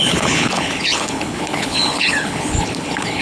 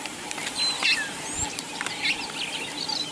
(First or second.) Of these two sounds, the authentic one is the second